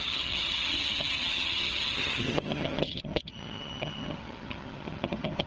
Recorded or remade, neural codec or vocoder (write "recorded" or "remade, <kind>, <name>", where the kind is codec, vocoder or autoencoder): remade, vocoder, HiFi-GAN